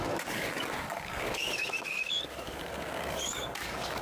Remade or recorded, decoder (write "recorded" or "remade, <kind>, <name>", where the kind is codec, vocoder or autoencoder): remade, codec, DAC